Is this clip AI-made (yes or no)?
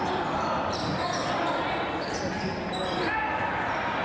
no